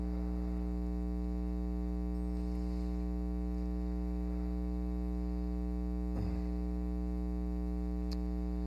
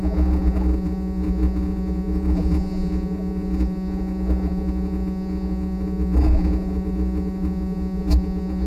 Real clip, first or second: first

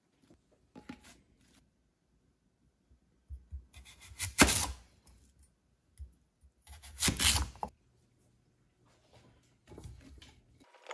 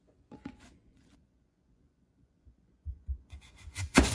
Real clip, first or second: first